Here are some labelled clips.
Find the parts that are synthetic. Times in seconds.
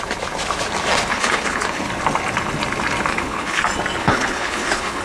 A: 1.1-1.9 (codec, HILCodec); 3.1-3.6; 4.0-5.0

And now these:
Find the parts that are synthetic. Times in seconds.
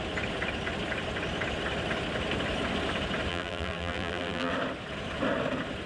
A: 3.3-4.5 (vocoder, BigVGAN v2)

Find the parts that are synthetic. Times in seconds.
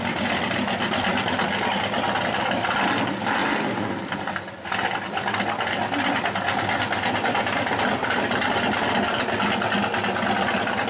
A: none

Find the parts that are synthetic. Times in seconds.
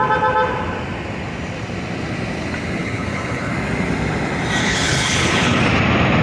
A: 2.8-3.5 (codec, HILCodec); 4.6-5.6